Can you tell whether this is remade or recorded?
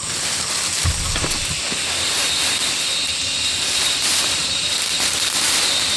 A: recorded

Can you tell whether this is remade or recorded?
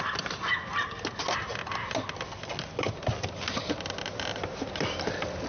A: recorded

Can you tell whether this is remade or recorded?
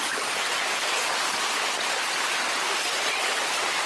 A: recorded